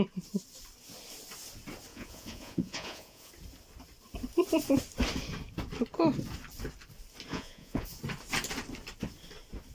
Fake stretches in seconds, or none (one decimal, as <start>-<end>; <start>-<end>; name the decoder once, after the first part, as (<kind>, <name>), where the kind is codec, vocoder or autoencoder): 1.9-3.3 (vocoder, Vocos); 7.3-8.0